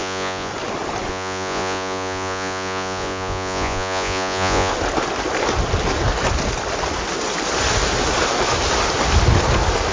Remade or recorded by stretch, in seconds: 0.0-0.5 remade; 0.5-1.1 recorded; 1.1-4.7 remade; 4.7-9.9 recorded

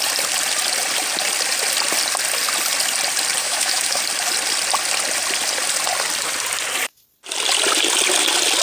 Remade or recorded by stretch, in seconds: 0.0-3.4 recorded; 3.4-4.0 remade; 4.0-8.6 recorded